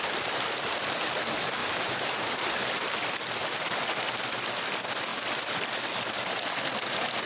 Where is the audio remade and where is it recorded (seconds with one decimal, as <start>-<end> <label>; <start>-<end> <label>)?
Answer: 0.0-1.6 recorded; 1.6-3.0 remade; 3.0-7.3 recorded